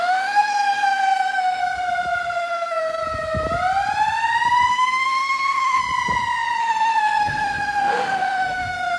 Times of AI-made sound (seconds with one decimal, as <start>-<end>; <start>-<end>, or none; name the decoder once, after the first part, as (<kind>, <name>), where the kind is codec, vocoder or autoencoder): 0.0-1.6 (autoencoder, DAC-VAE); 2.4-3.0; 4.7-5.8; 6.6-9.0

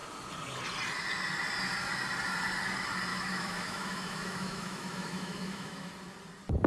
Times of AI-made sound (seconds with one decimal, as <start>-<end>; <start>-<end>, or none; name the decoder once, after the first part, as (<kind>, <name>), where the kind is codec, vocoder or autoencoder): 3.1-5.9 (autoencoder, DAC-VAE)

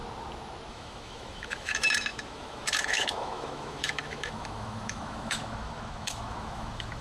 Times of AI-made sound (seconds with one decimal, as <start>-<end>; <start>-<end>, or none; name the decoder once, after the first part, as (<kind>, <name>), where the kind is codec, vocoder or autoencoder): 0.7-7.0 (autoencoder, DAC-VAE)

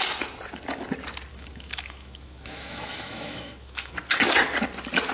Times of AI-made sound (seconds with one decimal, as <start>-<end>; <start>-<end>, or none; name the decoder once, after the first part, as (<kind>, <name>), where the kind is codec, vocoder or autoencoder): 1.3-3.9 (autoencoder, DAC-VAE)